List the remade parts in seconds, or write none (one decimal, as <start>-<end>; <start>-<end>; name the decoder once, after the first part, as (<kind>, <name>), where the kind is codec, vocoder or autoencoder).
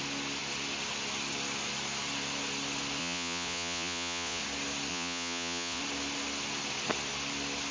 3.0-4.4 (vocoder, Vocos); 4.9-5.8